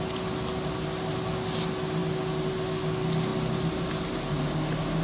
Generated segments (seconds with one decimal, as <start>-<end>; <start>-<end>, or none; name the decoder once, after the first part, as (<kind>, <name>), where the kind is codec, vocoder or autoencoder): none